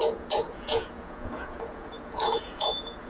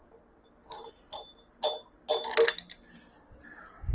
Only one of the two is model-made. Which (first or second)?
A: first